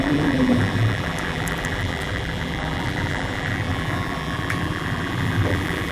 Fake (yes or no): yes